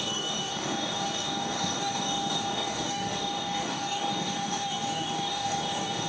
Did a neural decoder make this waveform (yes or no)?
yes